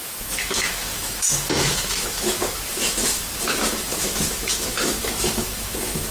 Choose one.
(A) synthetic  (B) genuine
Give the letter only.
A